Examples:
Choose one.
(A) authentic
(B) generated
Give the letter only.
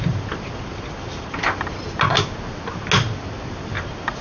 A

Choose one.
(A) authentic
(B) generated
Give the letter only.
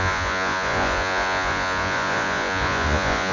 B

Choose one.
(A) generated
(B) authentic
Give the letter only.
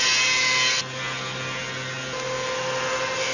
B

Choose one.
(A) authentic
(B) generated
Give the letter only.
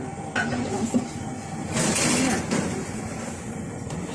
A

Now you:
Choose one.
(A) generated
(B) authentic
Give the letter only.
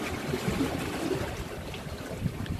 B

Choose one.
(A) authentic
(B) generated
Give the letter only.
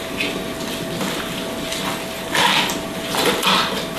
A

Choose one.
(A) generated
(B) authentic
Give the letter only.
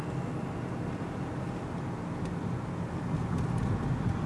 B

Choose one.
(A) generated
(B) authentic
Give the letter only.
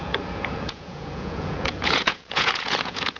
A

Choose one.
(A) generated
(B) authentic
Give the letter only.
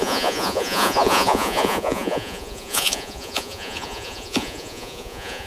A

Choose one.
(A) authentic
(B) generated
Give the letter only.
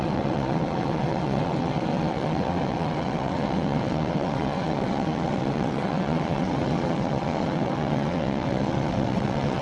B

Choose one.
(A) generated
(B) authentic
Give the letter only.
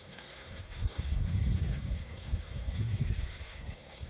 A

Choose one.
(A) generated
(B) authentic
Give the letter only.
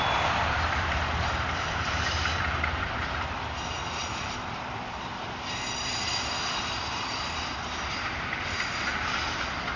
A